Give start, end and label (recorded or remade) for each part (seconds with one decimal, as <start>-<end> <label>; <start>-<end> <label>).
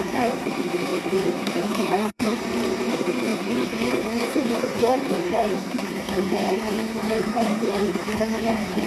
0.0-2.4 remade; 2.4-2.9 recorded; 2.9-8.9 remade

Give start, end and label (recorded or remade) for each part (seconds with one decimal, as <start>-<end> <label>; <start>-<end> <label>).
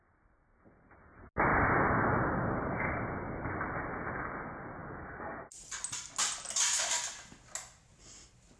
0.0-8.6 recorded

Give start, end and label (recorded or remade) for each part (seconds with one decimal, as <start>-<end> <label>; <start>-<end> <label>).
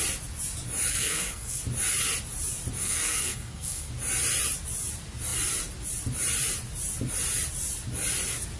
0.0-0.9 recorded; 0.9-1.6 remade; 1.6-2.8 recorded; 2.8-3.9 remade; 3.9-8.6 recorded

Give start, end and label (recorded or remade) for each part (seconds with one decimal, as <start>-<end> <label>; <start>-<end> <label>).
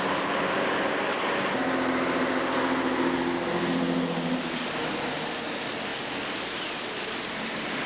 0.0-7.9 recorded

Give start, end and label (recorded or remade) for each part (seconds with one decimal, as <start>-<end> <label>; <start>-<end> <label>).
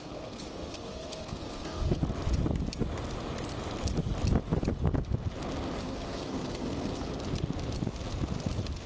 0.0-2.0 remade; 2.0-5.8 recorded; 5.8-7.1 remade; 7.1-8.9 recorded